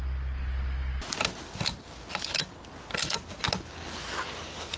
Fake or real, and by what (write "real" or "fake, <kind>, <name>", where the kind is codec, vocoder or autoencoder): real